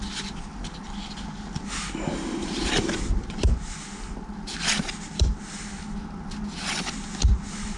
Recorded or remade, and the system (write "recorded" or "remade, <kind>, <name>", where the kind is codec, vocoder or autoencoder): recorded